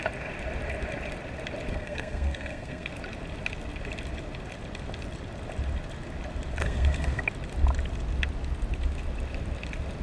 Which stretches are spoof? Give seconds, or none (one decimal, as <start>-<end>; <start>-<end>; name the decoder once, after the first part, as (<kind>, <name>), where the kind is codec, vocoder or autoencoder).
1.7-2.9 (codec, SNAC); 6.6-7.2